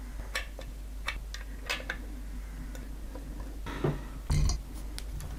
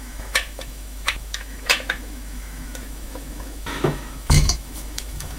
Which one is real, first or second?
first